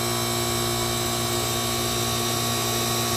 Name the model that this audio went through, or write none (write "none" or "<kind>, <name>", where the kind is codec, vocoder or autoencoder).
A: none